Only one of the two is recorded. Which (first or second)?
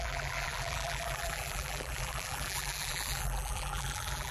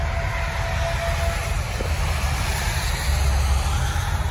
second